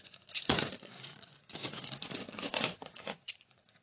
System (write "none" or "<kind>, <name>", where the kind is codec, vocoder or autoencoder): vocoder, Vocos